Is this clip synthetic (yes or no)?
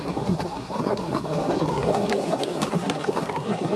yes